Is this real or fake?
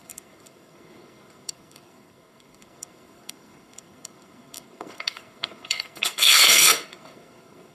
fake